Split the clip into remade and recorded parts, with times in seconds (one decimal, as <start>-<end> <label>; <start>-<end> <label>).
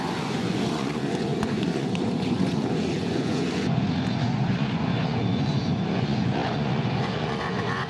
0.0-7.9 remade